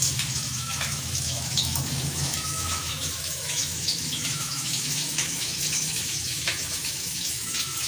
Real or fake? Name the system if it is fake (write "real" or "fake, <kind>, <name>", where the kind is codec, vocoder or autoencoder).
fake, autoencoder, DAC-VAE